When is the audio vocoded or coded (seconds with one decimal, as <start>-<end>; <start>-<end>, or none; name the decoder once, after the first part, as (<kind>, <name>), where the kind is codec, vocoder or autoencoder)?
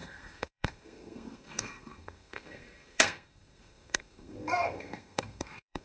0.0-5.8 (codec, SNAC)